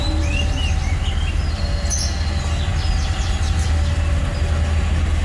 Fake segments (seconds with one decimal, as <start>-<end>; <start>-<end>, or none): none